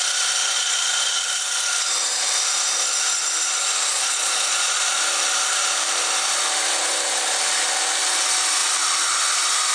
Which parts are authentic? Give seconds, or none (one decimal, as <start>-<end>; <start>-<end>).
0.0-0.4; 1.2-3.9; 4.8-9.7